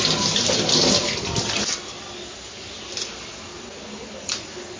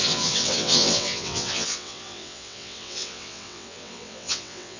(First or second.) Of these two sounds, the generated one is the second